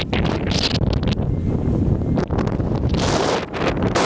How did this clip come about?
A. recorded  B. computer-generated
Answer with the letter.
A